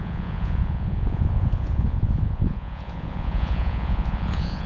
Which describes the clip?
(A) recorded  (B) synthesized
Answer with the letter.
B